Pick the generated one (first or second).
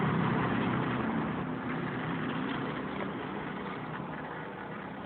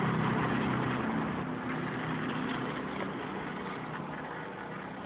first